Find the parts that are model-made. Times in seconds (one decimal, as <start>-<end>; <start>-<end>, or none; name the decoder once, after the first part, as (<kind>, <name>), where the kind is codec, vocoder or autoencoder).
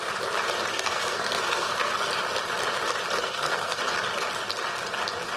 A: 0.7-2.1 (codec, SNAC); 3.2-3.8